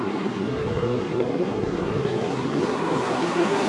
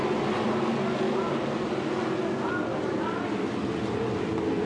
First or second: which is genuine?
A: second